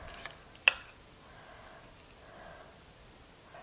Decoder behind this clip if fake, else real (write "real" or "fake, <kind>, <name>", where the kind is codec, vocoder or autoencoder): real